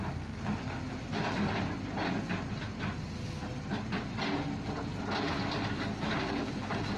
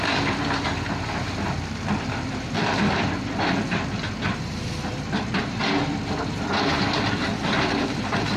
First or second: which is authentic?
first